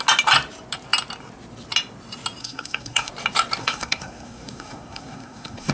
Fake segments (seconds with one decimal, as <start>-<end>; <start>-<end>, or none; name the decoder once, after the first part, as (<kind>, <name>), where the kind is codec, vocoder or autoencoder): 2.4-3.1 (codec, SNAC); 3.6-5.7